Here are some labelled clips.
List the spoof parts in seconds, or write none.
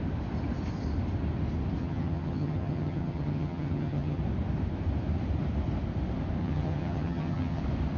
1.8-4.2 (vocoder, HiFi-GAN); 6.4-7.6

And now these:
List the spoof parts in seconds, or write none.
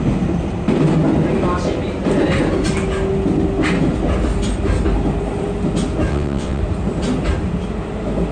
6.1-6.6 (vocoder, WaveNeXt)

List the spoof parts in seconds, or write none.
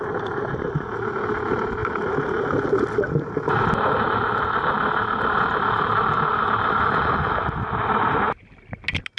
none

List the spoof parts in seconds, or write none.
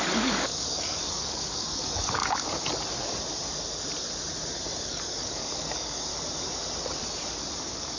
0.0-2.2 (codec, DAC); 4.8-6.1; 7.6-8.0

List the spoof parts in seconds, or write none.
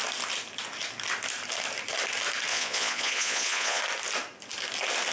2.5-3.8 (vocoder, Vocos)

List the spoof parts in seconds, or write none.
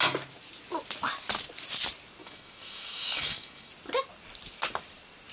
2.2-3.7 (autoencoder, DAC-VAE)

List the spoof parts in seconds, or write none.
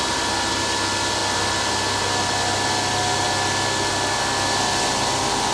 none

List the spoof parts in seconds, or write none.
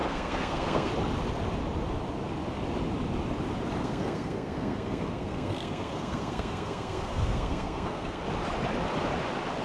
0.0-0.9 (codec, SNAC); 3.8-8.2